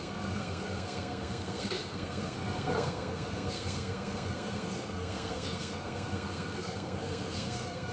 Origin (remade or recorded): remade